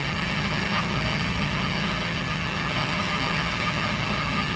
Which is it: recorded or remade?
remade